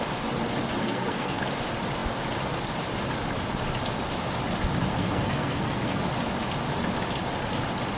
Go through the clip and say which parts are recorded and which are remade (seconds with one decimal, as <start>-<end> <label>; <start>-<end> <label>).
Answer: 0.0-0.8 recorded; 0.8-1.4 remade; 1.4-4.9 recorded; 4.9-6.0 remade; 6.0-8.0 recorded